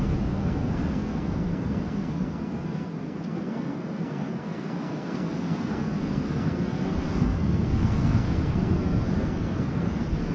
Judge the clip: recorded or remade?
remade